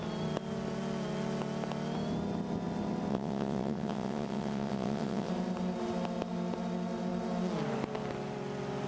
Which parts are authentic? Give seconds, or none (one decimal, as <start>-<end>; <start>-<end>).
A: 0.0-3.1; 5.3-8.9